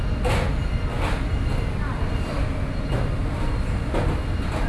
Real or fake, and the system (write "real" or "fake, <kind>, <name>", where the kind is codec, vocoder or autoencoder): real